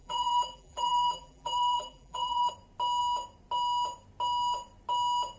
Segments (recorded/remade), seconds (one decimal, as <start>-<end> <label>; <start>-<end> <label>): 0.0-2.5 remade; 2.5-5.4 recorded